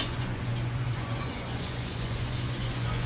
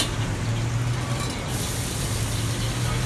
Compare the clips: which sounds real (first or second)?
second